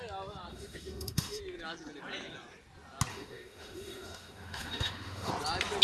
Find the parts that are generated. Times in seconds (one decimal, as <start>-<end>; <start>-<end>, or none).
0.5-1.4; 3.1-5.3